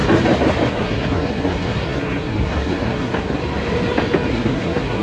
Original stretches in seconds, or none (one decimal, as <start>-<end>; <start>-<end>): 0.0-0.7; 3.4-4.3